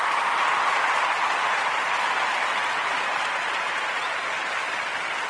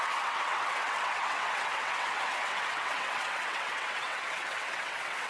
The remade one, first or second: second